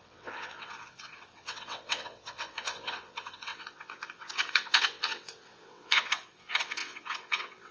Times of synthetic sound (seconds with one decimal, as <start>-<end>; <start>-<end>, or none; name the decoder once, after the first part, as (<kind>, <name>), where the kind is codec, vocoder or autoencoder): 0.0-7.7 (vocoder, WaveNeXt)